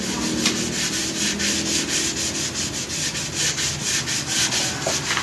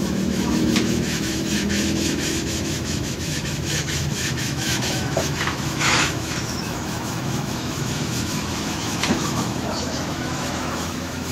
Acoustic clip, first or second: first